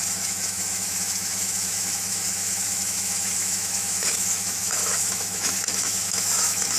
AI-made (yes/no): yes